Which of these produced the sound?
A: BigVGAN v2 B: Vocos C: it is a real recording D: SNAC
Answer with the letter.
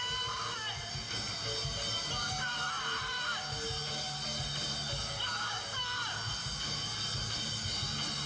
C